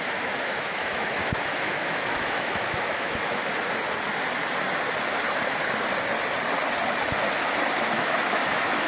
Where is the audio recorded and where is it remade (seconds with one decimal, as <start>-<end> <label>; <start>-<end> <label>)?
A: 0.0-3.5 remade; 3.5-7.9 recorded; 7.9-8.9 remade